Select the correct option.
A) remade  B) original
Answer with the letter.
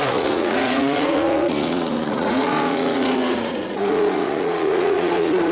A